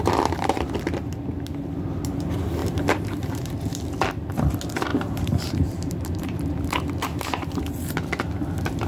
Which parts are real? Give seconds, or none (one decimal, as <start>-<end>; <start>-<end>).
0.0-2.6; 3.5-4.9; 7.7-8.9